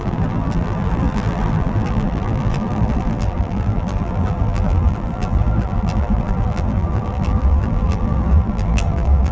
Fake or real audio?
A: fake